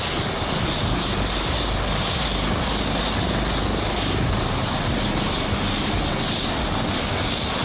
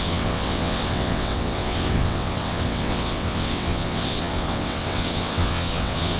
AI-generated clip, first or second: second